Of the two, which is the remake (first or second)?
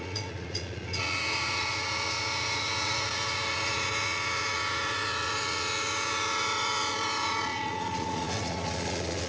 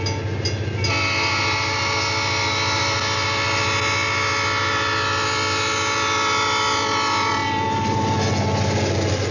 first